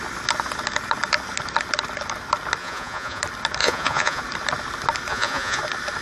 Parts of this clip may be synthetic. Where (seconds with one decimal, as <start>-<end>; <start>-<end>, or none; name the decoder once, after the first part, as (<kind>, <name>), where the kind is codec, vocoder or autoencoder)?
2.6-3.2 (vocoder, Vocos); 3.6-4.2; 5.1-5.6